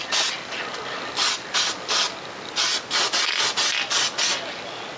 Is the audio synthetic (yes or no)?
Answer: no